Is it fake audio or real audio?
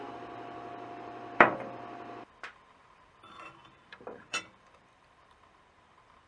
fake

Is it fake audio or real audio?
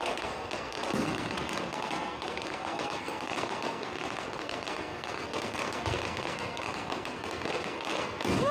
fake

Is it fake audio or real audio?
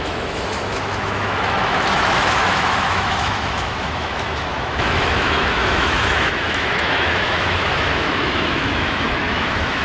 fake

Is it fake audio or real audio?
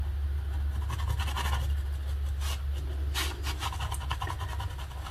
real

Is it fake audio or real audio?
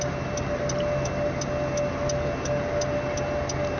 real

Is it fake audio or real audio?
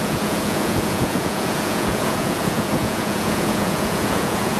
fake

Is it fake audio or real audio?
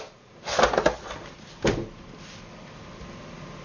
real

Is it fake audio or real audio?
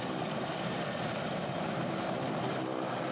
real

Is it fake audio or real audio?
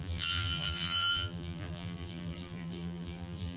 fake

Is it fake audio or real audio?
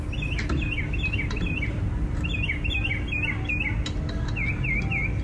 real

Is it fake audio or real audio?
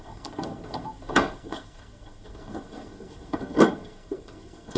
fake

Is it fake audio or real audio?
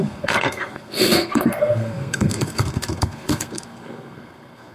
fake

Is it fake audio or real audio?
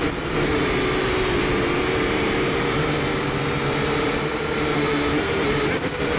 fake